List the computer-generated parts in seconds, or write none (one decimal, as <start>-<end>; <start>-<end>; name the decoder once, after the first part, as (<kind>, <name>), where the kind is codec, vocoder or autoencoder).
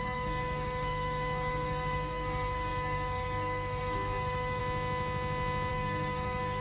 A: 0.0-4.6 (codec, SNAC); 5.7-6.6